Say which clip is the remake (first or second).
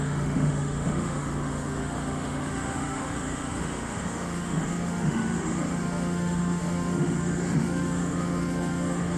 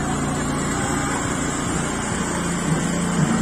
first